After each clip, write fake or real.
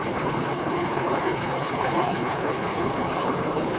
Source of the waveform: fake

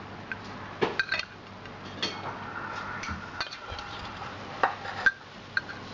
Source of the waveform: real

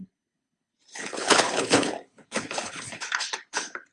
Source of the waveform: fake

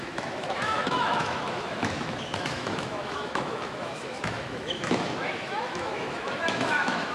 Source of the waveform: fake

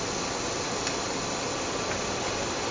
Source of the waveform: real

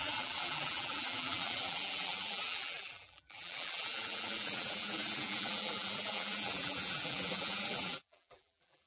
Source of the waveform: fake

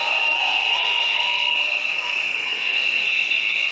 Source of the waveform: fake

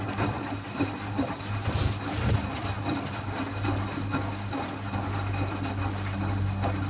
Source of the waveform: real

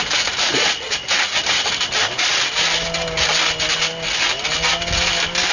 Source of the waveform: real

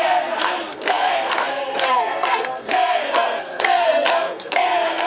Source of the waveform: fake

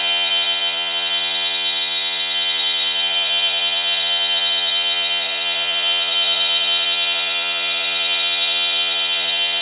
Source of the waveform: fake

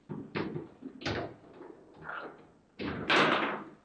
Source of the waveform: real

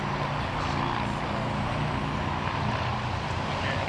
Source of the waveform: real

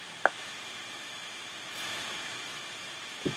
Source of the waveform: fake